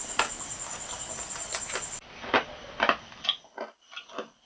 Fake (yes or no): no